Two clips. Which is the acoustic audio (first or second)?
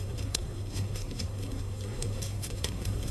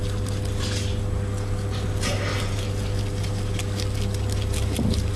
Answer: second